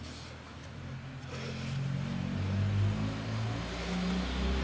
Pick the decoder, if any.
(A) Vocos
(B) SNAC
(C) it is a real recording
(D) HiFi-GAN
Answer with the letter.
C